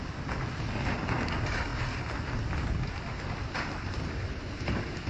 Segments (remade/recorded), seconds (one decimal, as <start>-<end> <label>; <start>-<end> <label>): 0.0-5.1 recorded